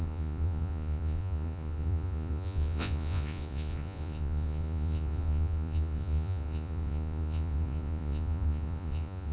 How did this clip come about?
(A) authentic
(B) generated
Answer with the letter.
B